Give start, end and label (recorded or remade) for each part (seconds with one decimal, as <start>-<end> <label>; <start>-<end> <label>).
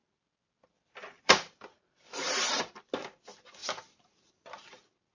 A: 0.0-5.1 recorded